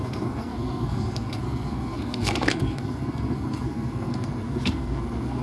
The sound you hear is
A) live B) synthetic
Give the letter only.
B